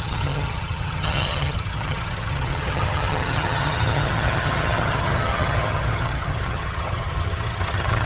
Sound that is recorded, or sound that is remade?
remade